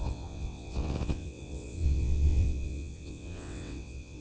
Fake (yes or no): yes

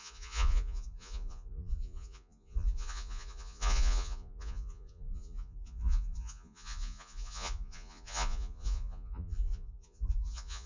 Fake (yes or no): yes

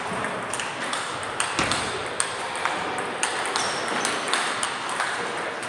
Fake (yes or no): no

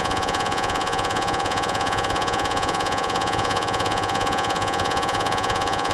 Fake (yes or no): yes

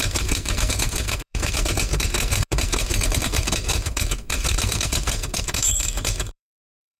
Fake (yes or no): yes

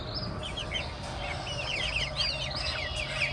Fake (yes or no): no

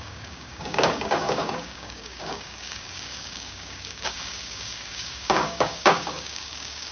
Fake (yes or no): yes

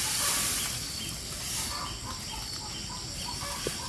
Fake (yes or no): yes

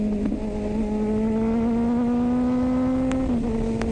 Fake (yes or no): no